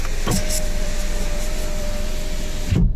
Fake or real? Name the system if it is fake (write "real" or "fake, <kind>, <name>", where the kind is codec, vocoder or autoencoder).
real